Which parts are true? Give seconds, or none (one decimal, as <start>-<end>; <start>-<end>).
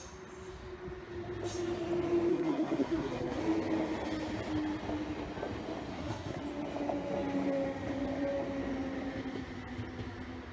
0.0-2.3; 3.4-5.9; 6.4-10.5